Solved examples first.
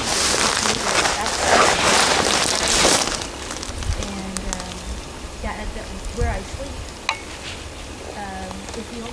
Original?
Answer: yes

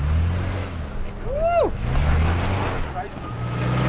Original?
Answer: yes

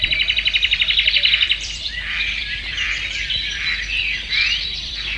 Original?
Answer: no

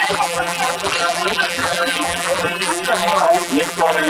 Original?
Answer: no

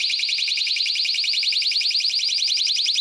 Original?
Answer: no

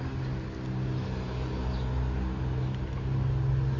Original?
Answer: yes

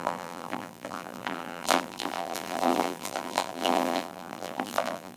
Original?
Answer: no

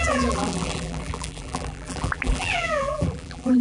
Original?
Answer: no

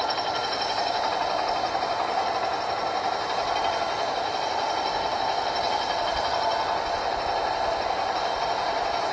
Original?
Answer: yes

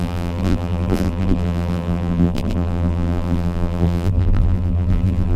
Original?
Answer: no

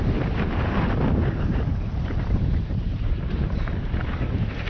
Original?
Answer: no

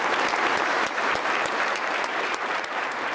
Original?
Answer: no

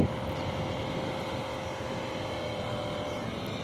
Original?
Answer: yes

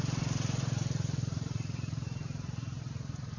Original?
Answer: no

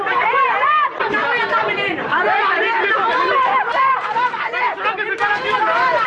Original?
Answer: no